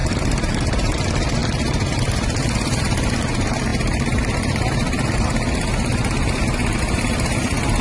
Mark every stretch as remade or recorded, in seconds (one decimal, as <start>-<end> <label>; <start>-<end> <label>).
0.0-7.8 remade